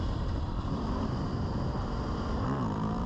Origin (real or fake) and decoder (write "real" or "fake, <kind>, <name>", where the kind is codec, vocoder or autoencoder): fake, vocoder, BigVGAN v2